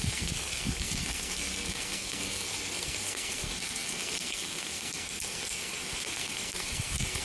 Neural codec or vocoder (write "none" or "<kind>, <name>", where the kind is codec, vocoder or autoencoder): codec, SNAC